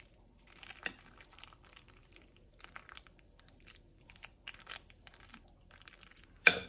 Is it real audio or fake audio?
fake